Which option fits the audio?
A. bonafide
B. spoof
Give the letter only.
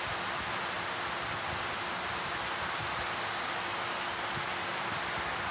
A